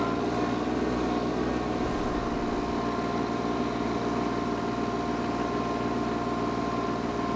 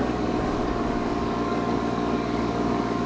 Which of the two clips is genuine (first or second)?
first